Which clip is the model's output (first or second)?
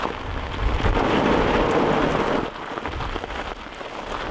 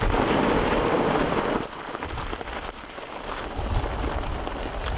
second